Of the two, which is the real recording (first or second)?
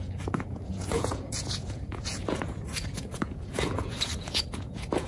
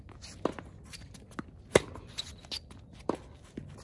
second